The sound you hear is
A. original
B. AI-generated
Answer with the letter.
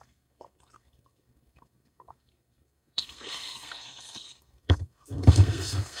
B